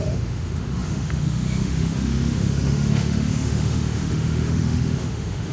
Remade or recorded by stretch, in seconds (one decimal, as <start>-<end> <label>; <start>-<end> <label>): 0.0-5.5 remade